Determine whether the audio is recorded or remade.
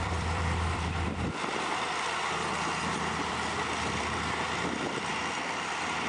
remade